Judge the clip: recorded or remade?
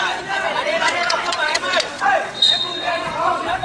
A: remade